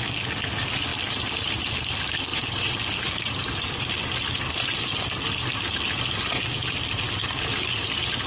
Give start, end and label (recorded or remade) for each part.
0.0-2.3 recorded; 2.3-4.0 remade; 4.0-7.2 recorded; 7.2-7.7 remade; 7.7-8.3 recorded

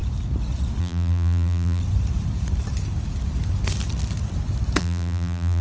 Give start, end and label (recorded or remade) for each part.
0.0-0.8 recorded; 0.8-1.8 remade; 1.8-4.8 recorded; 4.8-5.6 remade

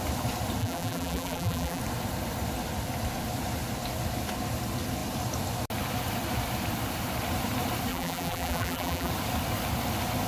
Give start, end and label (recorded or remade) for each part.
0.0-0.6 recorded; 0.6-1.8 remade; 1.8-7.9 recorded; 7.9-9.1 remade; 9.1-10.3 recorded

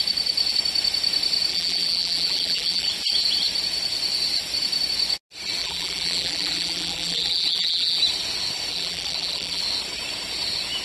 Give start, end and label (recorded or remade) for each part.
0.0-1.5 recorded; 1.5-2.9 remade; 2.9-5.6 recorded; 5.6-8.0 remade; 8.0-8.7 recorded; 8.7-9.6 remade; 9.6-10.8 recorded

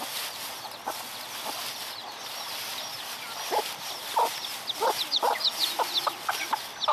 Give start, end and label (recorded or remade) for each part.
0.0-2.0 recorded; 2.0-6.1 remade; 6.1-6.9 recorded